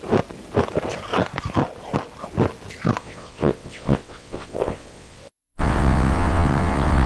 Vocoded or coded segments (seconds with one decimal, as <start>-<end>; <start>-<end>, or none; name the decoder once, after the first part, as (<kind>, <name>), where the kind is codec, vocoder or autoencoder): 3.0-7.1 (vocoder, WaveNeXt)